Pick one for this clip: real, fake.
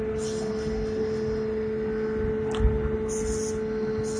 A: real